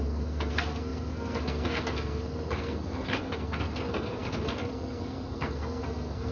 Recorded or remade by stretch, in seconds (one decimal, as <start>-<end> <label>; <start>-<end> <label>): 0.0-6.3 remade